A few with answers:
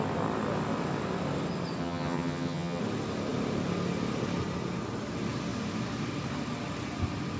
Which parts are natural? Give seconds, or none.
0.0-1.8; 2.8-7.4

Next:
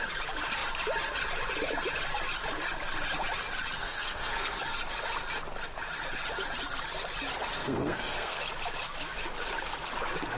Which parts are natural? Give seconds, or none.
0.0-3.8; 4.5-7.5; 8.4-10.4

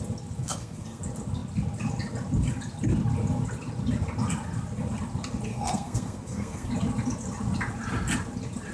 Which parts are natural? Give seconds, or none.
0.0-0.4; 1.0-5.5; 6.7-8.7

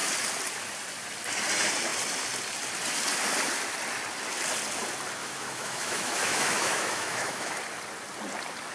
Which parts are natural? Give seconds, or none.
0.0-5.2; 7.5-8.7

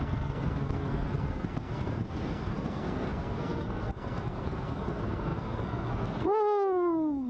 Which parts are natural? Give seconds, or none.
none